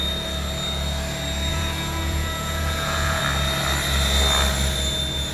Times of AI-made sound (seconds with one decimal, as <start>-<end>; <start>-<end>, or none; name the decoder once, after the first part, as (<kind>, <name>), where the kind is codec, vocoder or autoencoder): 1.5-3.2 (vocoder, Vocos)